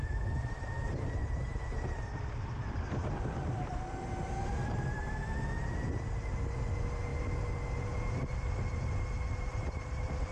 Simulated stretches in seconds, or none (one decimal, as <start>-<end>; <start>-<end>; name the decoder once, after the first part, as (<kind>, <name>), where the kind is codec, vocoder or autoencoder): none